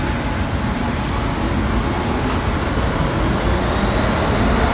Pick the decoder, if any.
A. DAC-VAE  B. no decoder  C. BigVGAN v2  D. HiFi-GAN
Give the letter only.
B